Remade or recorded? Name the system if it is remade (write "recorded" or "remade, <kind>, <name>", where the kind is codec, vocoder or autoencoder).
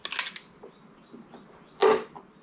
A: recorded